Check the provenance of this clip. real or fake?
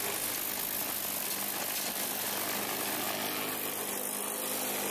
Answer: real